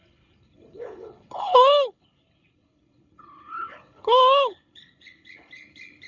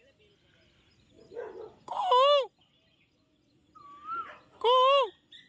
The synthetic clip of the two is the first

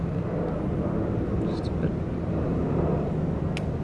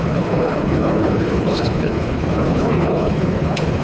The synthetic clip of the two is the second